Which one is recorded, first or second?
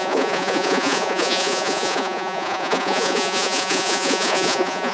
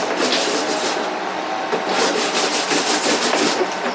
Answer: second